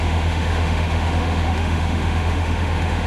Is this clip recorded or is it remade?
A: remade